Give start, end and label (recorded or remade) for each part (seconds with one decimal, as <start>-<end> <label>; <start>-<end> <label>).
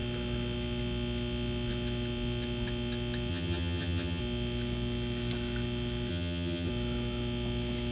0.0-3.3 recorded; 3.3-4.2 remade; 4.2-6.1 recorded; 6.1-6.7 remade; 6.7-7.9 recorded